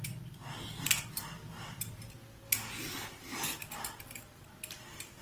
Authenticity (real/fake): real